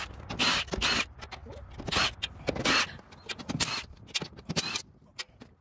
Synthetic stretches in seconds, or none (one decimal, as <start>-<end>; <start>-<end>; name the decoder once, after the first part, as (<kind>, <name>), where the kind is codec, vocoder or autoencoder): none